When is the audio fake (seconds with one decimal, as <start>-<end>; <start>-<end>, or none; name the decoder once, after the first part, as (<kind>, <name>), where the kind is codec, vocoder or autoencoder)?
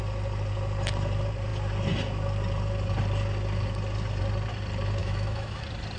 5.0-5.6 (autoencoder, DAC-VAE)